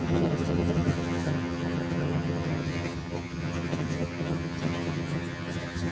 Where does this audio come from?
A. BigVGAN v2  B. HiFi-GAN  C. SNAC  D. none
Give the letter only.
B